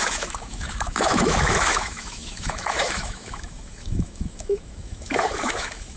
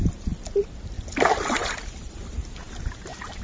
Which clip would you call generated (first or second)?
first